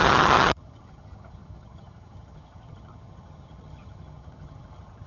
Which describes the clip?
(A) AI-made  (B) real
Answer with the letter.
A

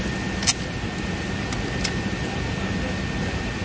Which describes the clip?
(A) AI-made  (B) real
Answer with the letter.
B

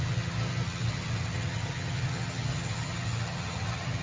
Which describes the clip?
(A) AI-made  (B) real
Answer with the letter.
A